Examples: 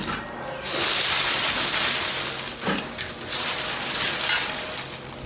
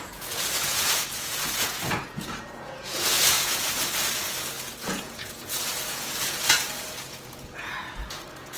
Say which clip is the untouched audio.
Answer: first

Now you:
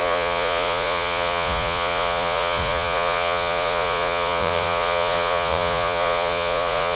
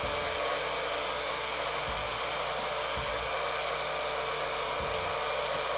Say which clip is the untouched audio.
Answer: second